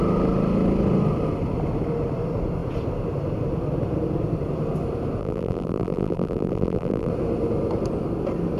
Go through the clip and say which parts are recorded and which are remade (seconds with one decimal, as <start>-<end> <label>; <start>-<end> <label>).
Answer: 0.0-5.2 recorded; 5.2-7.1 remade; 7.1-8.6 recorded